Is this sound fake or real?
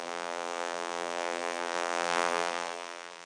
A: fake